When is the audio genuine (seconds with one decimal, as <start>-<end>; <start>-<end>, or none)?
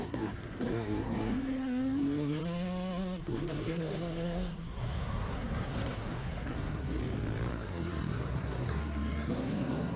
2.4-3.2; 7.0-7.5